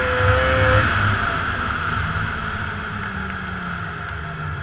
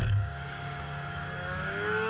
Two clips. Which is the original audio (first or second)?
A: first